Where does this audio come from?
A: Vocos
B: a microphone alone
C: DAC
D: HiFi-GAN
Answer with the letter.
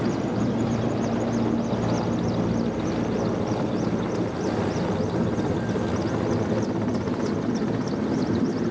B